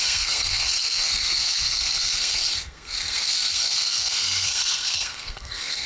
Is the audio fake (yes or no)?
yes